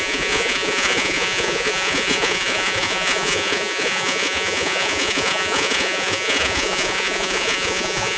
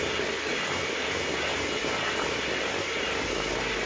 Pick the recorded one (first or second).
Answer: second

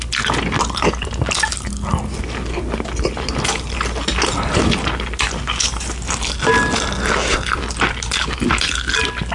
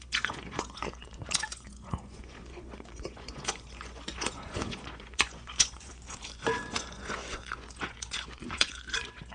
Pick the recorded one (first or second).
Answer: first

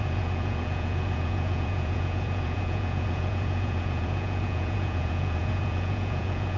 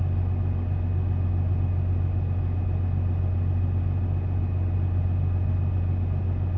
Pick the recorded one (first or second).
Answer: second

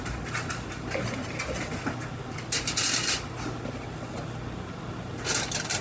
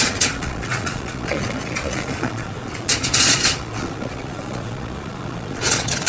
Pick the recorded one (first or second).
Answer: first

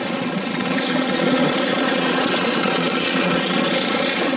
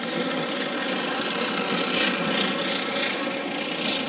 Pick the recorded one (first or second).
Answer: second